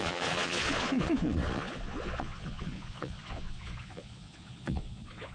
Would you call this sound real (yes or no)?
no